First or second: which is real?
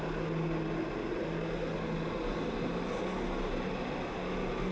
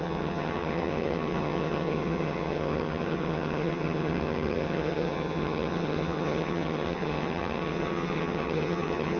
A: first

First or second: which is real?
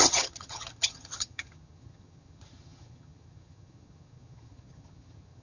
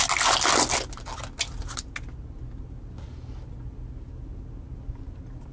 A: second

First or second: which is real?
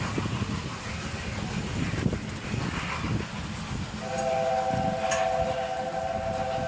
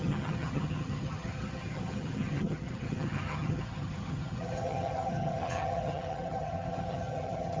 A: first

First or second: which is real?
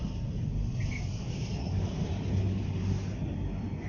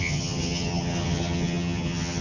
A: first